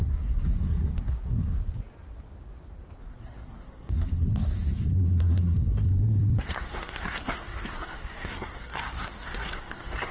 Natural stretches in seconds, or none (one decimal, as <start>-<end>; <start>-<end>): 1.6-3.0